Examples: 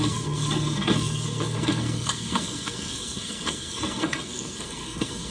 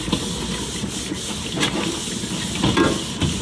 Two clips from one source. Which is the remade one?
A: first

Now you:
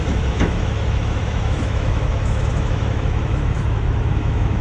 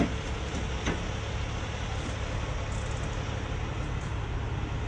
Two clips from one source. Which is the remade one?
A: first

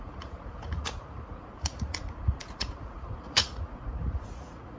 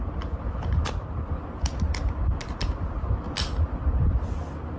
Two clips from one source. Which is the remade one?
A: first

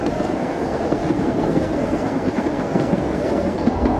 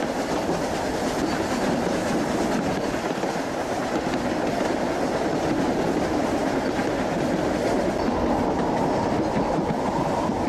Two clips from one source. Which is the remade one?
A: first